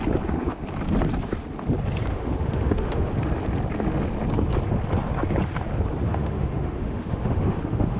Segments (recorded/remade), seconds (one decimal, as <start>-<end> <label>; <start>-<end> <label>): 0.0-2.1 recorded; 2.1-3.1 remade; 3.1-6.1 recorded; 6.1-8.0 remade